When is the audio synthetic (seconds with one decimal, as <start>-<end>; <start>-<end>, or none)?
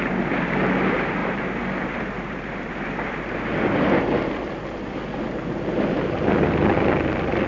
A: 1.2-2.9